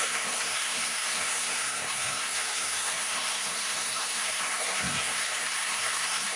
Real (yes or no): no